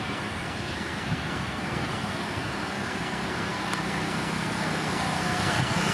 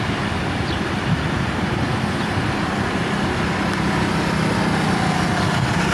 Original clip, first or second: second